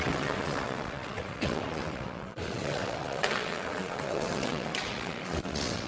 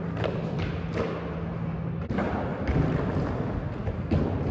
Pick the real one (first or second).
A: second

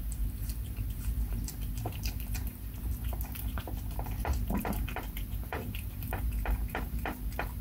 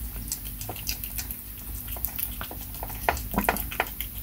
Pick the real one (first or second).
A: second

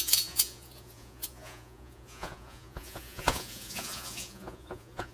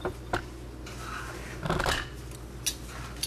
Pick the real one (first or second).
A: second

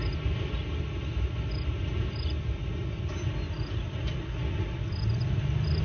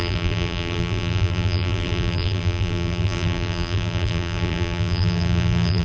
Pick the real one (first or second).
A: first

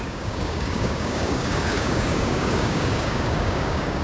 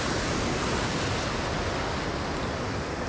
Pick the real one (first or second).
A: second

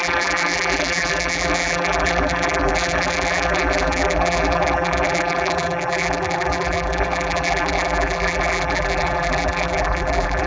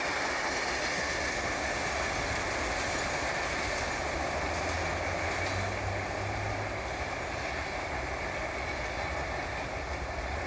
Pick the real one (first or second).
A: second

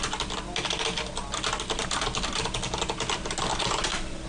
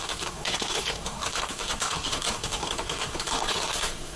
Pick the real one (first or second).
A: first